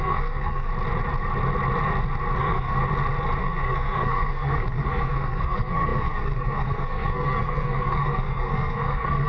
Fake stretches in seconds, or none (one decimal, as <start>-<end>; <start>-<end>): 0.0-0.7; 2.4-2.8; 3.4-9.3